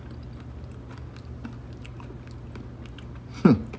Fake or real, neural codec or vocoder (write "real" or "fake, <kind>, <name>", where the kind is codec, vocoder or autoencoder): real